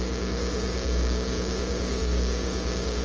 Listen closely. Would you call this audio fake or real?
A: fake